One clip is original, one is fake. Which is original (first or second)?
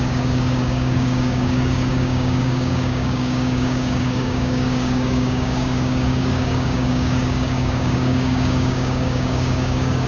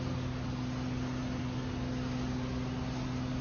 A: second